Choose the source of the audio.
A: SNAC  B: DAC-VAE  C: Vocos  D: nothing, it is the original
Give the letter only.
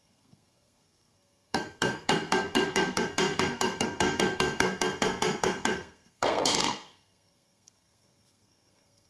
A